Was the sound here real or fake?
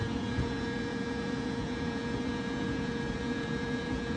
fake